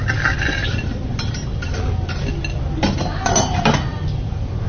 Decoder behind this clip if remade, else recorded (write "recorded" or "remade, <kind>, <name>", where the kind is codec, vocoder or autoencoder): recorded